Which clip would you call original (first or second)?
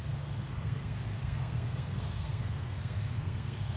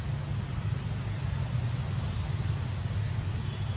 second